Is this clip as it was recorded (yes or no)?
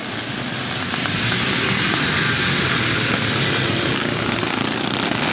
yes